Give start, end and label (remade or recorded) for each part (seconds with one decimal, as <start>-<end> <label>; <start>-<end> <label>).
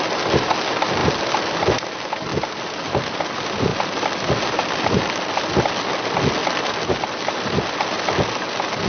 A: 0.0-1.0 recorded; 1.0-1.8 remade; 1.8-3.7 recorded; 3.7-4.8 remade; 4.8-6.4 recorded; 6.4-7.4 remade; 7.4-8.9 recorded